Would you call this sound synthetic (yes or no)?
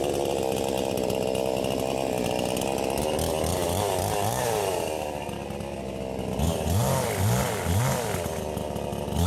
no